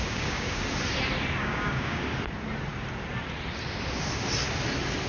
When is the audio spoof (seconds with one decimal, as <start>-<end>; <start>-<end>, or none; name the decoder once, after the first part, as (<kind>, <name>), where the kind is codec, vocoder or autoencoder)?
0.0-0.6 (codec, DAC); 1.4-2.0